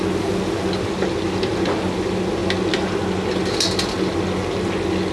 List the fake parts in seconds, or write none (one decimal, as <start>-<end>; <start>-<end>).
none